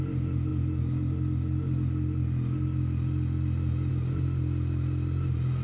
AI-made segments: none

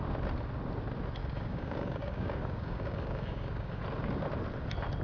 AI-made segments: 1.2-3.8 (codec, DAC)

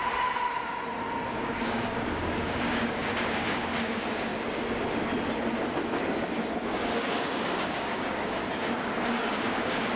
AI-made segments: 1.3-4.3 (codec, DAC); 6.2-8.4; 9.1-10.0

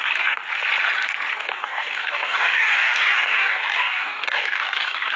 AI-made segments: 0.0-0.4 (codec, DAC); 1.3-5.2

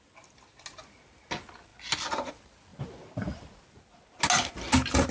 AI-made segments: none

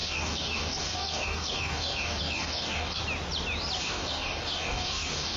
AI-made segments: 0.0-3.0 (codec, DAC); 3.8-5.4

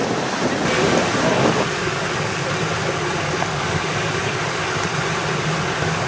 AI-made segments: 1.3-2.4 (codec, DAC); 3.2-4.6; 5.6-6.1

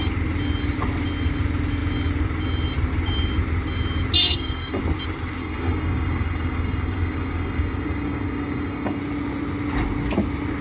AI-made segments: 4.2-4.8 (codec, DAC); 5.4-9.0